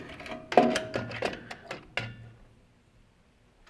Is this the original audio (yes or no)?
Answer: yes